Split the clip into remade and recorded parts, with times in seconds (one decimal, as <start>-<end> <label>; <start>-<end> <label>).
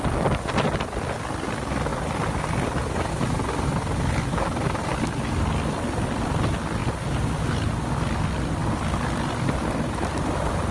0.0-10.7 recorded